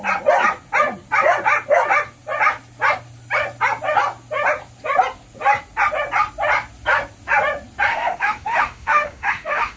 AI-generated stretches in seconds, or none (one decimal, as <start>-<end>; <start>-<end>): 7.9-9.8